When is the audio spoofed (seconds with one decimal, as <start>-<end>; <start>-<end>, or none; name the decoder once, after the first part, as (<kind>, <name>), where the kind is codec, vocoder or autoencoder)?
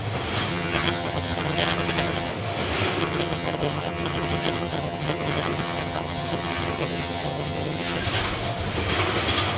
0.5-2.3 (vocoder, HiFi-GAN); 3.0-8.0